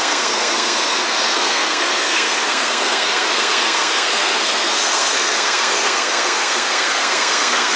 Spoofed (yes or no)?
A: yes